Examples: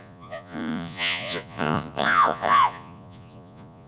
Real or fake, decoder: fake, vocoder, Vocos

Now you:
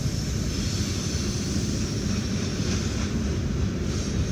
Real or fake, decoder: real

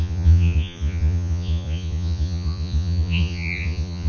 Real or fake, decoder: fake, vocoder, Vocos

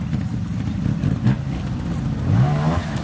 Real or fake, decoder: real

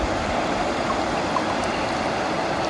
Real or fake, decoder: real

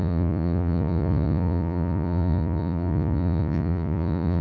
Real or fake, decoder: fake, vocoder, Vocos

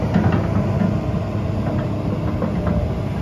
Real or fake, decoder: real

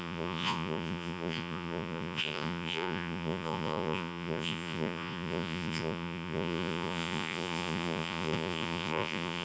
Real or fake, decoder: fake, vocoder, Vocos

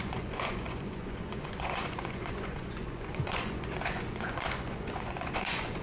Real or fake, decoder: fake, vocoder, Vocos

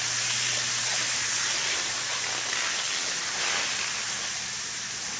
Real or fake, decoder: real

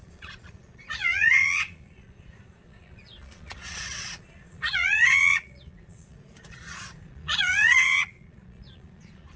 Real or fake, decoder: fake, vocoder, Vocos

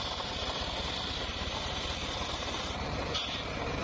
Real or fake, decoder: real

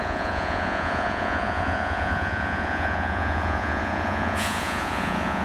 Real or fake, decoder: fake, vocoder, Vocos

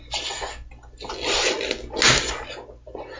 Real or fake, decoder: real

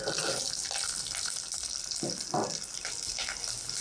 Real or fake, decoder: real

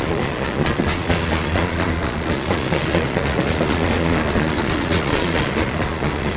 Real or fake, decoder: fake, vocoder, Vocos